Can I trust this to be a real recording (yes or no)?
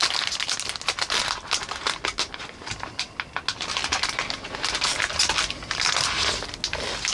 yes